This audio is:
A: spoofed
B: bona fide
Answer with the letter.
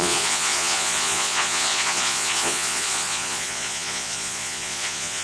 A